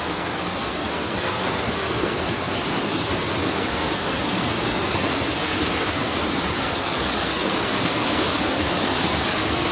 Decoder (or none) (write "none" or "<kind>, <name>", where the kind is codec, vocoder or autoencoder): codec, SNAC